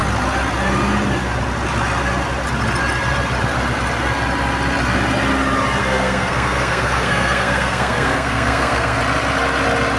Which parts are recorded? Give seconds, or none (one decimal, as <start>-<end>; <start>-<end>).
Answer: 0.0-5.8; 9.0-10.0

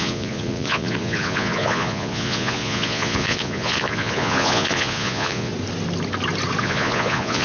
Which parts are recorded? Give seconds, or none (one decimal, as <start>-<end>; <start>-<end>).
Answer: 5.5-6.6

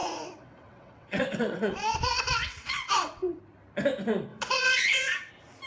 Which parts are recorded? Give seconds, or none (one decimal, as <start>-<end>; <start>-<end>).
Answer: 3.4-4.3; 5.3-5.7

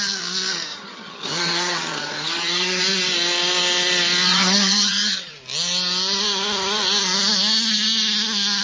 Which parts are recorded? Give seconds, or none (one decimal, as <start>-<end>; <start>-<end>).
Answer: 0.0-0.7; 2.8-4.3; 5.3-8.6

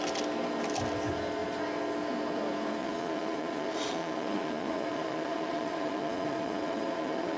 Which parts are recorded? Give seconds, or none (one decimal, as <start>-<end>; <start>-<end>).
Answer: 0.0-2.8

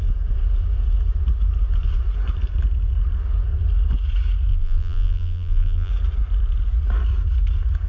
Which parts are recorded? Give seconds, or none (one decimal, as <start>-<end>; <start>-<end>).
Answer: 0.0-4.5; 5.9-7.9

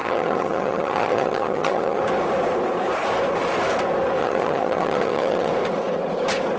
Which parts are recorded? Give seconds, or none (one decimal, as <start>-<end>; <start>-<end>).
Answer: 2.0-4.2; 5.5-6.6

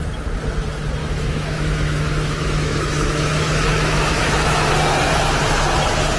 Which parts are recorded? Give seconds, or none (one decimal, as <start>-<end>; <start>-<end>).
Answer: 0.0-1.0; 4.7-6.2